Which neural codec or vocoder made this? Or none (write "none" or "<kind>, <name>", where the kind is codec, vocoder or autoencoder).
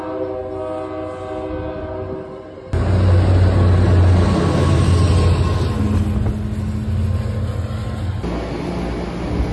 none